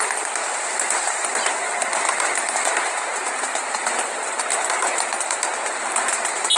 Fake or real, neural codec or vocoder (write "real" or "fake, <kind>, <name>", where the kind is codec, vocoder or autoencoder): real